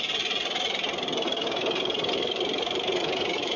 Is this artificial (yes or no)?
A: yes